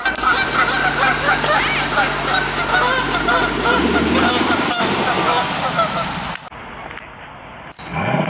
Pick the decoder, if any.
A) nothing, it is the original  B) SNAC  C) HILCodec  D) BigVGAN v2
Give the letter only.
A